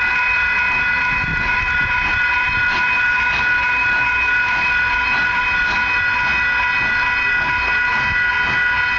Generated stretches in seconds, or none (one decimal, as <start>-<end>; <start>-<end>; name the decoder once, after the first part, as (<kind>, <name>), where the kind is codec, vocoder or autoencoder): 1.3-5.4 (vocoder, BigVGAN v2)